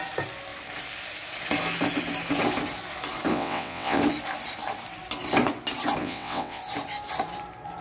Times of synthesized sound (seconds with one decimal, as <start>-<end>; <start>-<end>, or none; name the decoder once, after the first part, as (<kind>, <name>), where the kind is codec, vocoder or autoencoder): 3.3-4.0 (vocoder, WaveNeXt); 6.0-6.6